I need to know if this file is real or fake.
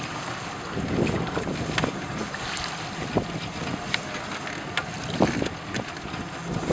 real